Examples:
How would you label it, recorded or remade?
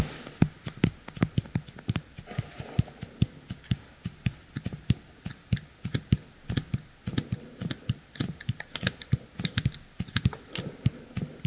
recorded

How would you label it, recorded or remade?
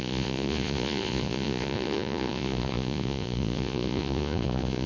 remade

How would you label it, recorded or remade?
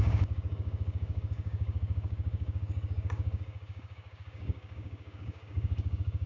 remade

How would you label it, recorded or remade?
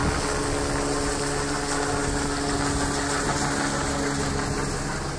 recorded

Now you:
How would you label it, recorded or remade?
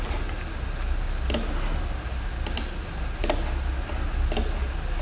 recorded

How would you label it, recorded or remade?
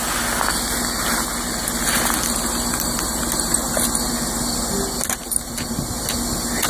recorded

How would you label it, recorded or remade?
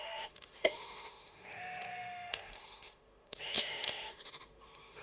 remade